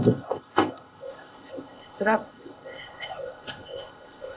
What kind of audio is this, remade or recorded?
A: remade